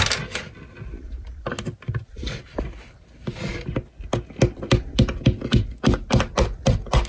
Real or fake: real